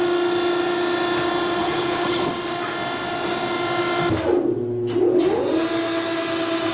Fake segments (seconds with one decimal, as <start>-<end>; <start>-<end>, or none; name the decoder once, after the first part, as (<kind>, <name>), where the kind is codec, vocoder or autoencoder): 1.6-2.3 (codec, HILCodec)